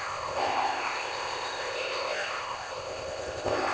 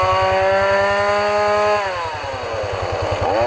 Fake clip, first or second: first